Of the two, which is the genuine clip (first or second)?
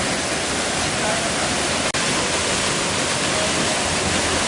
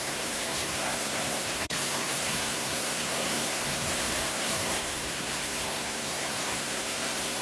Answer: first